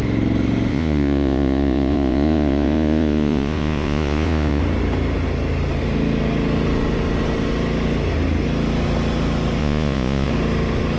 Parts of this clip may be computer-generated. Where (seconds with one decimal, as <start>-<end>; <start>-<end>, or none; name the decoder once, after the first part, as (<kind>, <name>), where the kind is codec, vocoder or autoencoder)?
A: 0.7-4.6 (vocoder, Vocos); 9.6-10.3